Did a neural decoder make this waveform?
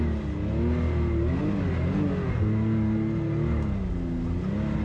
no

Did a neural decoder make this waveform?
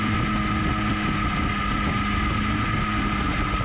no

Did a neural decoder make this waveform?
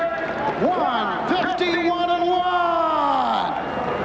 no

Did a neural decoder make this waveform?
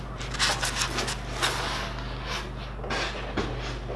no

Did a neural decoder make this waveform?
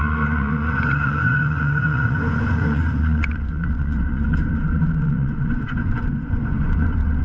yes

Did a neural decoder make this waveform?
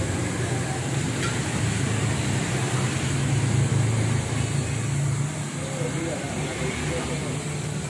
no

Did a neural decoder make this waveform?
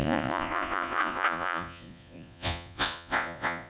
yes